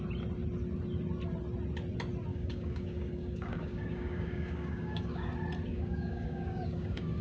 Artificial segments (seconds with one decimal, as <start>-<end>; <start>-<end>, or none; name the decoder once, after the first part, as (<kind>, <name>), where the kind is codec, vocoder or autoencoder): 2.3-5.3 (codec, DAC); 5.7-7.2

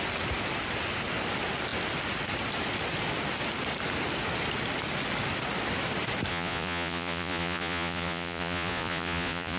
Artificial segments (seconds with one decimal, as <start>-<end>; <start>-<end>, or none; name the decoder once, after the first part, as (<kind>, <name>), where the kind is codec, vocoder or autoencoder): 6.3-9.6 (vocoder, Vocos)

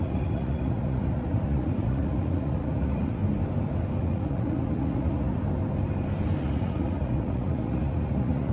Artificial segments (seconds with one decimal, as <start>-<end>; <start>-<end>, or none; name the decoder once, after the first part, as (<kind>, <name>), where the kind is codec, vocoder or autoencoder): 0.0-3.2 (vocoder, Vocos); 4.0-5.4; 6.4-8.5

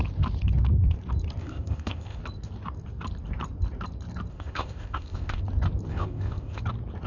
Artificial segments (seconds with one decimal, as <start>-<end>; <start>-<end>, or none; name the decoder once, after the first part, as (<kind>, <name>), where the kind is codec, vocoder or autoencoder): 1.4-2.2 (codec, ZipCodec); 4.3-5.4; 5.9-6.6

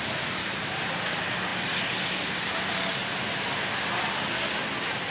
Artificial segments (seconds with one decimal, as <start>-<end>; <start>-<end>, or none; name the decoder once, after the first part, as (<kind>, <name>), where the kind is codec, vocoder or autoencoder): none

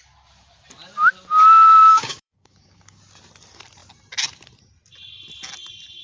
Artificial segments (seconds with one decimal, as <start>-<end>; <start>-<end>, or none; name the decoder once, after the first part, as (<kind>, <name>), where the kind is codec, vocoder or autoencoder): 1.9-3.0 (codec, DAC)

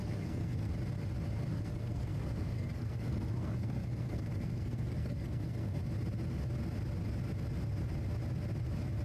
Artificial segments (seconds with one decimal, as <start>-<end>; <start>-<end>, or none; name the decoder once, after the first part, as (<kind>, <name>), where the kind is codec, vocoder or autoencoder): 0.0-0.7 (codec, SNAC); 1.5-5.8

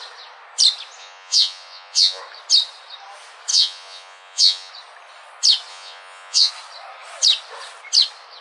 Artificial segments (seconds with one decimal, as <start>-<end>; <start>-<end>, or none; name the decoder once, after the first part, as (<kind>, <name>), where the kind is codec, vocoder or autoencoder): 1.0-2.2 (vocoder, Vocos); 3.5-4.7; 5.7-6.5